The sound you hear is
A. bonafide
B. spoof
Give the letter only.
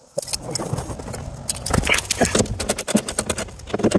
A